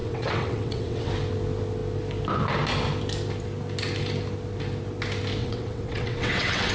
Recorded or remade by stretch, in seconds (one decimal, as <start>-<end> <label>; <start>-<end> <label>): 0.0-1.1 remade; 1.1-5.4 recorded; 5.4-6.7 remade